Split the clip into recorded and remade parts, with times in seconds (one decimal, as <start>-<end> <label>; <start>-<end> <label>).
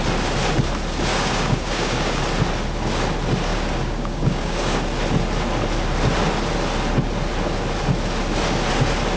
0.0-1.1 recorded; 1.1-2.2 remade; 2.2-3.5 recorded; 3.5-4.8 remade; 4.8-9.2 recorded